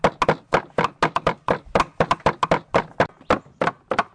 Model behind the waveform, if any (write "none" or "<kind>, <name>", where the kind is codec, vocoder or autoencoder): none